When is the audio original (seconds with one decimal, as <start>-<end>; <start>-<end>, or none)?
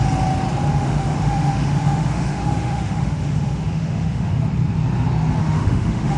0.0-0.7; 4.4-5.4